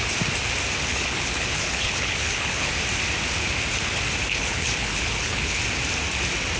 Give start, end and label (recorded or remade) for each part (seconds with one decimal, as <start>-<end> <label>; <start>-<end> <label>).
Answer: 0.0-0.9 recorded; 0.9-2.7 remade; 2.7-4.3 recorded; 4.3-5.6 remade; 5.6-6.6 recorded